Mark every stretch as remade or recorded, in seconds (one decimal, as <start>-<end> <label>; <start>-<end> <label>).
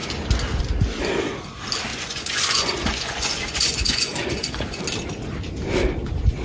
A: 0.0-1.9 recorded; 1.9-4.8 remade; 4.8-6.4 recorded